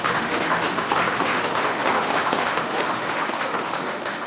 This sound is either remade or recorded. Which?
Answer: remade